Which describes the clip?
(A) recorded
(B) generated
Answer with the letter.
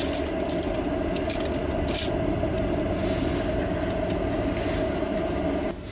A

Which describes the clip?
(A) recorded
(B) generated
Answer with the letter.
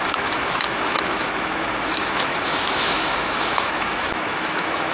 B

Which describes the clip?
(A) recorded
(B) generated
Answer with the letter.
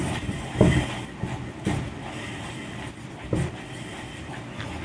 A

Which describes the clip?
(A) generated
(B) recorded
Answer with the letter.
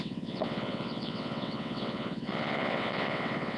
A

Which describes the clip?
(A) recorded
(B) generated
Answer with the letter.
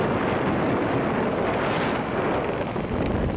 A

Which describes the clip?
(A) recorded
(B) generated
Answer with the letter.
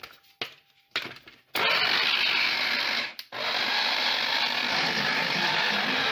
A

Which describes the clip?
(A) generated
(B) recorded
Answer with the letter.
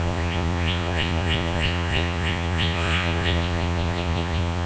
A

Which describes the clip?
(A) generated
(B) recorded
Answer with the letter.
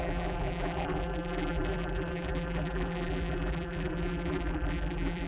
A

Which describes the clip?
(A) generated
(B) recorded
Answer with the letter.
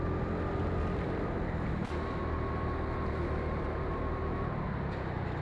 B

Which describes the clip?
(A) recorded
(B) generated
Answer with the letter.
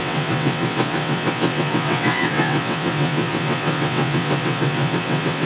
B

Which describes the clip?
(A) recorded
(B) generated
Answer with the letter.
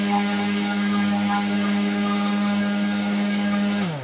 B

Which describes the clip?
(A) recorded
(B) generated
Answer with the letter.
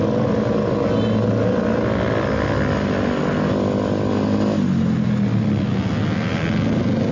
A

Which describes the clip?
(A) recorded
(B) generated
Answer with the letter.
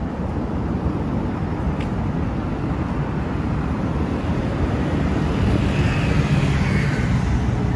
A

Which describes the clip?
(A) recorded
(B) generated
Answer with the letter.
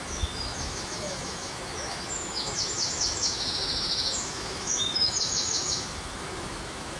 B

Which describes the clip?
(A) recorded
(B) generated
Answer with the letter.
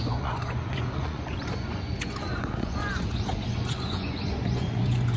B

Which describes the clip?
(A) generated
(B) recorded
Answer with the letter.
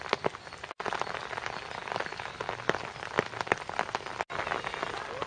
B